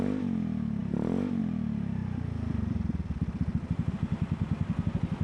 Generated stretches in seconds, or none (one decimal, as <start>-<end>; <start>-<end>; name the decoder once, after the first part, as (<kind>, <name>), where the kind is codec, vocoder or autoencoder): none